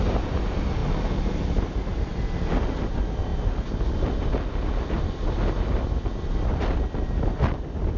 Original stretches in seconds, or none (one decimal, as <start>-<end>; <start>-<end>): 0.0-8.0